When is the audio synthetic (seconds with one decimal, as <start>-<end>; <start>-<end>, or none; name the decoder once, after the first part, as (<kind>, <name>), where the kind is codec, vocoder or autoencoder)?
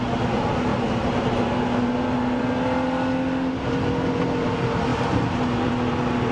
0.7-2.4 (vocoder, BigVGAN v2); 4.9-5.7